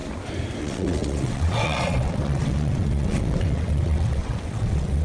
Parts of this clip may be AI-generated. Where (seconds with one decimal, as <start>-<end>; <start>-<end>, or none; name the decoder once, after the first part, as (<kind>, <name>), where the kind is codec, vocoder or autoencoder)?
0.6-5.0 (vocoder, WaveNeXt)